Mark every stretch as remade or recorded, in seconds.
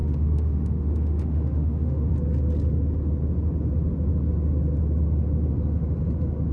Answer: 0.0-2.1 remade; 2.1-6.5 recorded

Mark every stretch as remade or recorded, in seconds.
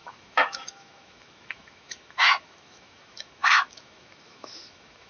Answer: 0.0-5.1 remade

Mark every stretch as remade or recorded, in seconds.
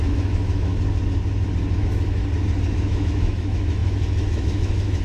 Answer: 0.0-0.7 remade; 0.7-1.8 recorded; 1.8-2.2 remade; 2.2-2.7 recorded; 2.7-5.0 remade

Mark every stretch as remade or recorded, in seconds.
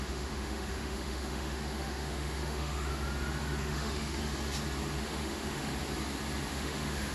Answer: 0.0-2.9 remade; 2.9-3.6 recorded; 3.6-4.2 remade; 4.2-5.0 recorded; 5.0-5.7 remade; 5.7-6.5 recorded; 6.5-7.1 remade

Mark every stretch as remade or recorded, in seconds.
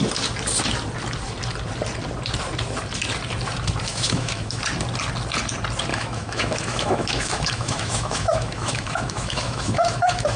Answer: 0.0-3.9 recorded; 3.9-4.6 remade; 4.6-5.9 recorded; 5.9-10.4 remade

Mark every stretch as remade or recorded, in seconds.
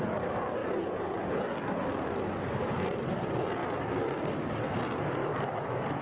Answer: 0.0-5.2 recorded; 5.2-6.0 remade